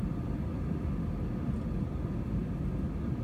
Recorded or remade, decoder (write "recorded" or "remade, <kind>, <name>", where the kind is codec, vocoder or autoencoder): recorded